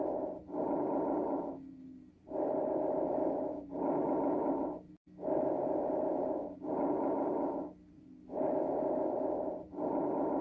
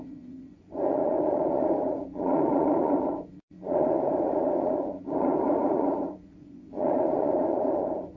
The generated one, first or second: second